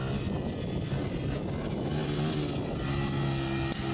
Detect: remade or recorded recorded